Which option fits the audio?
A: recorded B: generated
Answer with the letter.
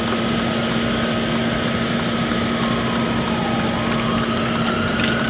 A